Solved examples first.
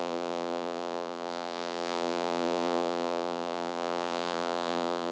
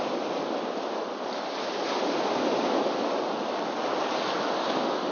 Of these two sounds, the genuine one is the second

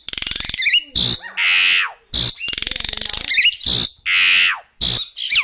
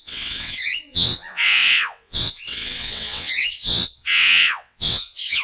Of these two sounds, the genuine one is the first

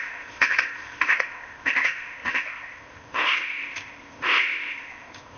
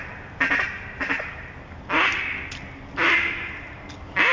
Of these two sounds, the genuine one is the second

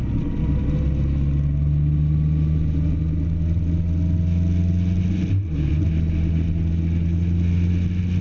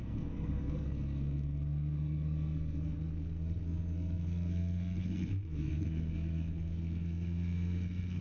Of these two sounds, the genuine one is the first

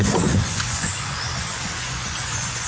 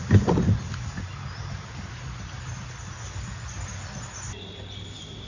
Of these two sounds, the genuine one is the second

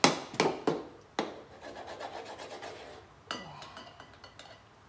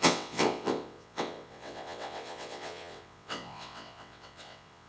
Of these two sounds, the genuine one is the first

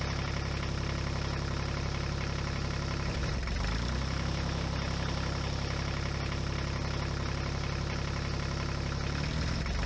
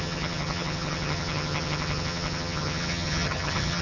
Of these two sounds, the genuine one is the first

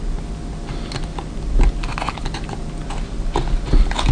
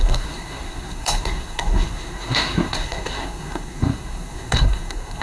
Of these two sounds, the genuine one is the first